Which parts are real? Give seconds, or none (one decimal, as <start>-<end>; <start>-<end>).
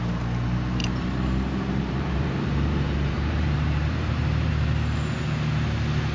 0.0-0.8; 4.5-6.1